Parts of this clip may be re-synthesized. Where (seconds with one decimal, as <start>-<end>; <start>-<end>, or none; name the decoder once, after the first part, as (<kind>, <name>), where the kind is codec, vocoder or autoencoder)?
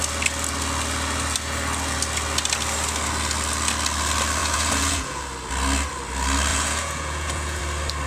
4.4-5.2 (vocoder, Vocos); 6.5-7.6